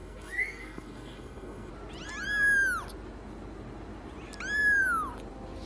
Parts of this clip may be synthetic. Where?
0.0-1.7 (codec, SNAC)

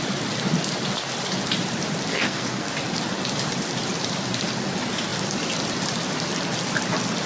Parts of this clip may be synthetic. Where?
2.1-2.7 (codec, SNAC)

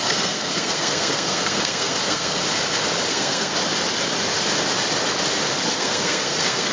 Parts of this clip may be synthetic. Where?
0.0-2.4 (codec, SNAC); 3.1-3.5; 5.7-6.7

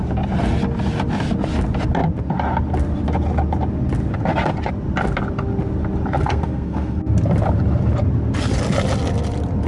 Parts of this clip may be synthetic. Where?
6.2-7.0 (codec, SNAC)